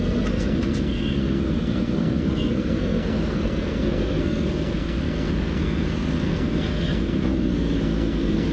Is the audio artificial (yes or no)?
yes